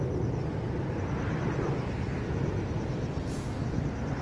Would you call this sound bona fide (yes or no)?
yes